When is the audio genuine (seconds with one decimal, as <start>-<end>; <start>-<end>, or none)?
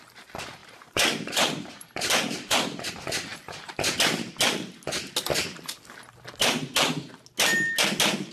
0.0-0.6; 2.9-8.3